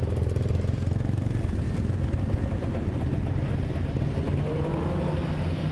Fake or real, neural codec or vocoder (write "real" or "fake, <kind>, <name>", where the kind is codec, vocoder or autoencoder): real